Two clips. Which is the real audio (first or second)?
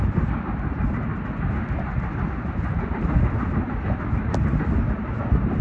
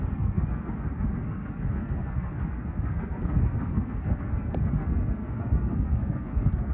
first